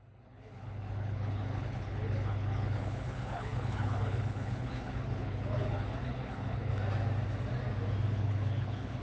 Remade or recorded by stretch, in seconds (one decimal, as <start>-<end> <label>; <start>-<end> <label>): 0.0-6.7 remade; 6.7-8.1 recorded; 8.1-9.0 remade